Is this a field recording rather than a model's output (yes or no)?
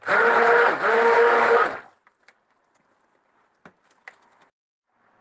yes